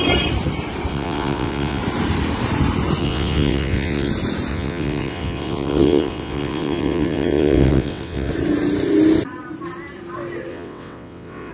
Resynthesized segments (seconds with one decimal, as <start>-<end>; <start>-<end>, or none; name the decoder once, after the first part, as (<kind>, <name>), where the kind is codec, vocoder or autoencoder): 0.9-1.8 (vocoder, WaveNeXt); 3.0-4.1; 4.5-8.3; 10.5-11.5